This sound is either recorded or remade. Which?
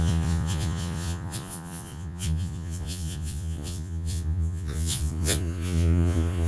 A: remade